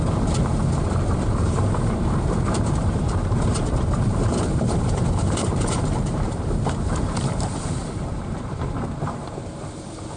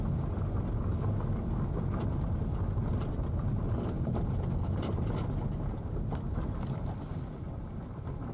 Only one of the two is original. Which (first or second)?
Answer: second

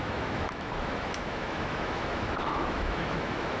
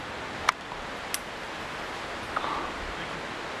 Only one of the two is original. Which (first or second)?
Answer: second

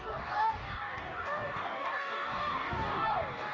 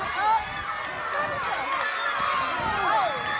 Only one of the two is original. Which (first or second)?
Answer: second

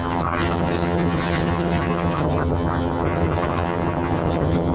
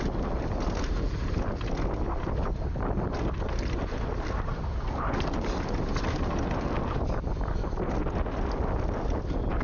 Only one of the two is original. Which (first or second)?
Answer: second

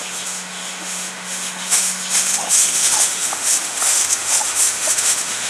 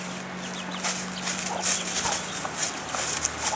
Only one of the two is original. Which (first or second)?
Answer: second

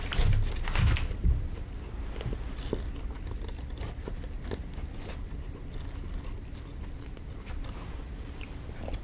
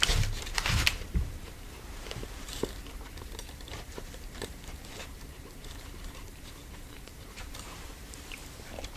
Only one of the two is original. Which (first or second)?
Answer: first